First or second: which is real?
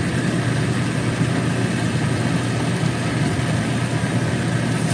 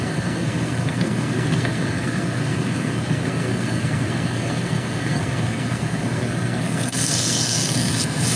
first